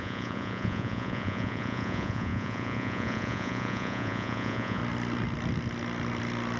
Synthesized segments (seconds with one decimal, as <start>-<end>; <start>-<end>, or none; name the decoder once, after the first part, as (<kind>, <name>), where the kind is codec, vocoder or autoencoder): 0.0-4.8 (vocoder, Vocos)